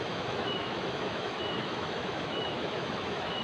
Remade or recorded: remade